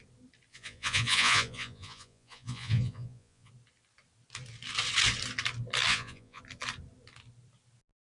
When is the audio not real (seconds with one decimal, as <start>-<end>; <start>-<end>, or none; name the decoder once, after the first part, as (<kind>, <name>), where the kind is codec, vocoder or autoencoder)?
0.5-3.5 (vocoder, Vocos); 5.9-6.4